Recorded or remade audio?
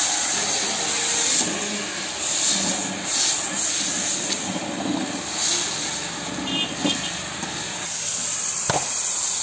recorded